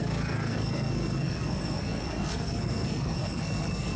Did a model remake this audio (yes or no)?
yes